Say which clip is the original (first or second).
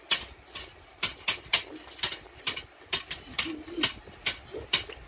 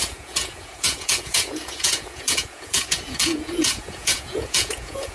first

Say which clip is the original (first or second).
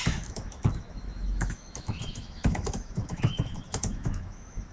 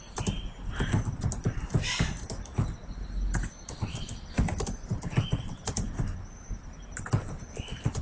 second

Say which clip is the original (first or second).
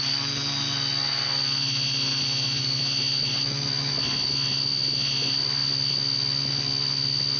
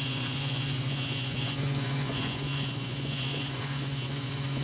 first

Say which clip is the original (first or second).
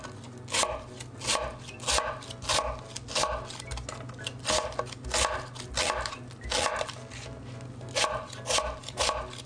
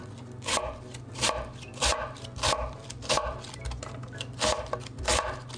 first